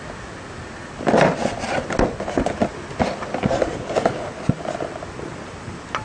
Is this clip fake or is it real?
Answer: real